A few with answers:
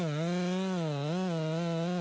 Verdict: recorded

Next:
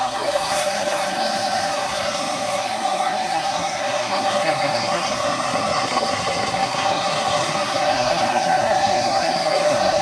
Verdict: remade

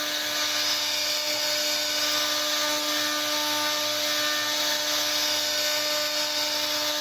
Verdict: recorded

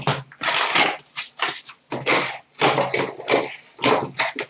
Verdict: recorded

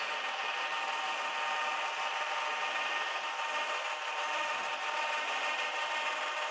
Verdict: recorded